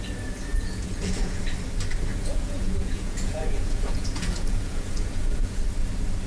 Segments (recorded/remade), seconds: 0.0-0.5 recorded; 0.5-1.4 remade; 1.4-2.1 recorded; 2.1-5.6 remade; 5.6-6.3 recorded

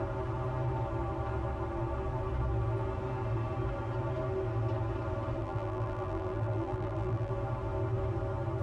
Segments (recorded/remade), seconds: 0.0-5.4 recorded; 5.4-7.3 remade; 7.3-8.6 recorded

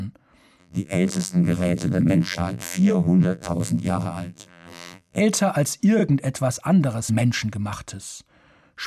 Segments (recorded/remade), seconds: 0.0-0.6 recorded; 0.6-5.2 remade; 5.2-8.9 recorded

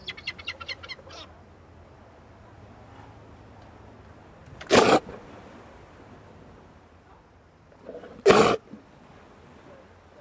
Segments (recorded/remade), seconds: 0.0-0.9 remade; 0.9-10.2 recorded